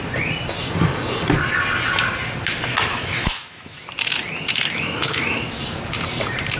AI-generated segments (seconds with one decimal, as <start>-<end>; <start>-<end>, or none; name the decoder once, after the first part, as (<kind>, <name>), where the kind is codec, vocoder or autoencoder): 2.9-3.8 (autoencoder, DAC-VAE); 4.5-5.6